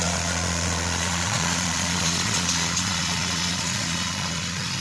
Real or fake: fake